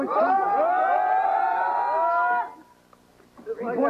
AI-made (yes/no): no